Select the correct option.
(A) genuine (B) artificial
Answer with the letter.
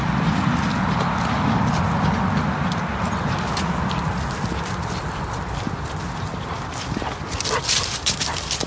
A